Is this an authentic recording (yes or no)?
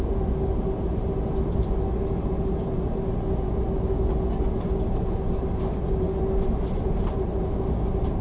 yes